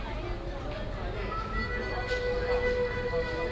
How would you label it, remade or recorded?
recorded